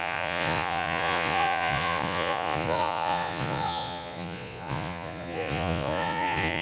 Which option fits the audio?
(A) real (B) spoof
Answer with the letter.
B